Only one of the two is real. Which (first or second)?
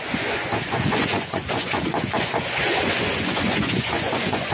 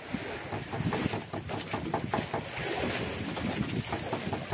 second